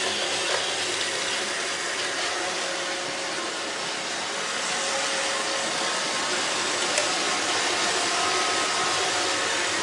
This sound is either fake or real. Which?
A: real